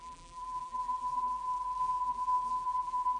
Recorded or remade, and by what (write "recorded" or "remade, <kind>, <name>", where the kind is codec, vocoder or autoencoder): remade, vocoder, BigVGAN v2